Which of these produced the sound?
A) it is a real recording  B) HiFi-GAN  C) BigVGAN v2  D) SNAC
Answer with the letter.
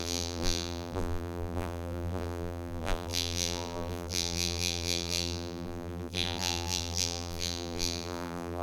C